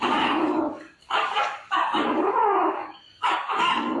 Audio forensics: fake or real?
fake